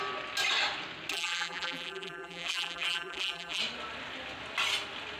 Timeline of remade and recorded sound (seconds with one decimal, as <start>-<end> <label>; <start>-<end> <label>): 0.0-1.1 recorded; 1.1-3.6 remade; 3.6-5.2 recorded

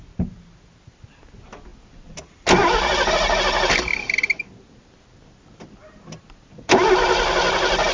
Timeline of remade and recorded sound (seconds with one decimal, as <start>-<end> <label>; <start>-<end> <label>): 0.0-7.9 recorded

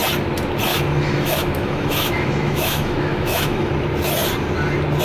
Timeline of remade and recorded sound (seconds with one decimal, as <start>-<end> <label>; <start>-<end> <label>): 0.0-0.7 recorded; 0.7-3.7 remade; 3.7-5.0 recorded

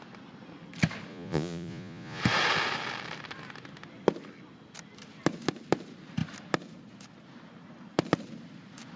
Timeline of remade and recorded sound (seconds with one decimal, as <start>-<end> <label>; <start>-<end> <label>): 0.0-1.1 recorded; 1.1-2.2 remade; 2.2-9.0 recorded

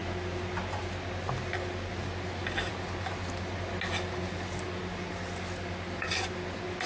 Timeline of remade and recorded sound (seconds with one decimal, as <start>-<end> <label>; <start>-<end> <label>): 0.0-6.9 recorded